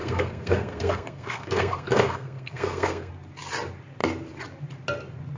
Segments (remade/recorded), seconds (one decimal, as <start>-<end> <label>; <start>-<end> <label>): 0.0-3.1 remade; 3.1-5.4 recorded